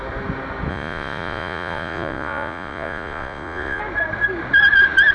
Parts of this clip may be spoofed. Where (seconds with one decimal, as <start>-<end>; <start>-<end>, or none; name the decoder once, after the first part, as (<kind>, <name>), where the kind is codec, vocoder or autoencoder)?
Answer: 0.7-3.8 (vocoder, Vocos)